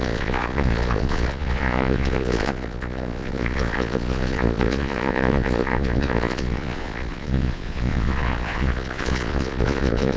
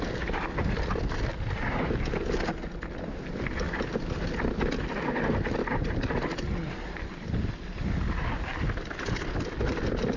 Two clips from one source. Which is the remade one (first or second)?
first